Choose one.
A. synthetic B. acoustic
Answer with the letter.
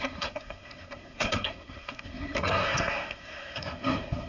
A